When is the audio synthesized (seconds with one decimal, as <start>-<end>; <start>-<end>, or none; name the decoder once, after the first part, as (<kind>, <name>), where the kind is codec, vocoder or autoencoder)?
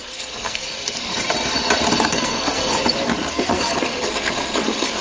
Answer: 0.0-1.1 (codec, SNAC); 2.0-2.7; 3.3-5.0